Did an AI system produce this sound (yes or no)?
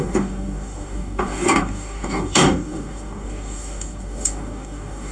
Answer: yes